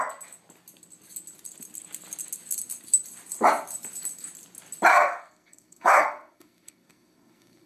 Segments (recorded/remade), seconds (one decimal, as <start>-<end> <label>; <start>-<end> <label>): 0.0-4.9 recorded; 4.9-7.7 remade